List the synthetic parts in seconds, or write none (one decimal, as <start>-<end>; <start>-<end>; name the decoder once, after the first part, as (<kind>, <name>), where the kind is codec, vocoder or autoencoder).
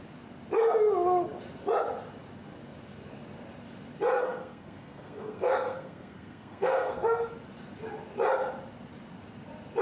4.1-7.3 (codec, SNAC)